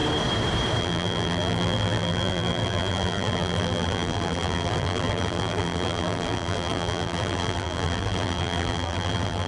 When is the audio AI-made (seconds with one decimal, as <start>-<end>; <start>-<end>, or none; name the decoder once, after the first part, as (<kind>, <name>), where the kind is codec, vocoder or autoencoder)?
0.8-9.5 (vocoder, BigVGAN v2)

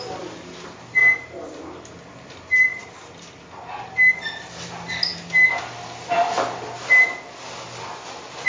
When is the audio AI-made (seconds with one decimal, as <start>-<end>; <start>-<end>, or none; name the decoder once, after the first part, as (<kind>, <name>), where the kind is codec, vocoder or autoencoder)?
none

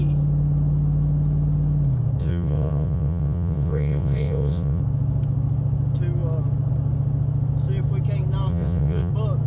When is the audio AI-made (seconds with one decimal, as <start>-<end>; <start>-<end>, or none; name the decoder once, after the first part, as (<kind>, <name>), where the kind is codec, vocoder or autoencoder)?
2.2-4.8 (vocoder, WaveNeXt); 8.5-9.1

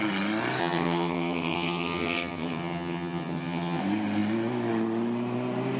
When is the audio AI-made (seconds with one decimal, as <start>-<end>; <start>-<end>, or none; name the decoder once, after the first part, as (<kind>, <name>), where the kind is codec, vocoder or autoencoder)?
0.6-3.8 (vocoder, HiFi-GAN)

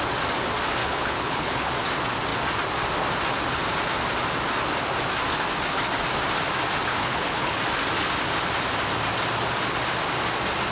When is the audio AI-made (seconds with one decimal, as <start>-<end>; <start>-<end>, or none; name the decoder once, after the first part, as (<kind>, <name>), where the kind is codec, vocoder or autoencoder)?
0.8-1.7 (codec, HILCodec); 6.9-7.6